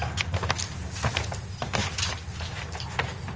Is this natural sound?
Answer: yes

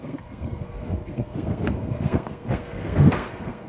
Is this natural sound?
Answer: no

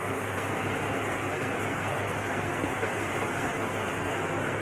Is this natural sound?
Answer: no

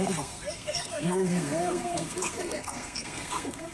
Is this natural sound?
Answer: no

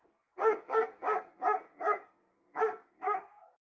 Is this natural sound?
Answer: no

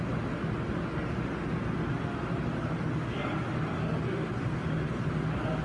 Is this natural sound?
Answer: yes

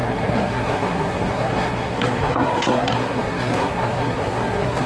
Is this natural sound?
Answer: no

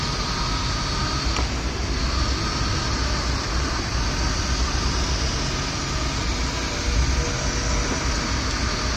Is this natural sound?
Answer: yes